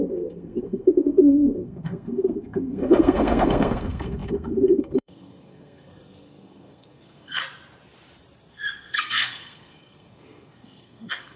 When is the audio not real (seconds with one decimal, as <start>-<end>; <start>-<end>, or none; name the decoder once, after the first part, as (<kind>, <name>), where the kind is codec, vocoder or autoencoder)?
0.0-7.4 (codec, SNAC); 8.5-11.4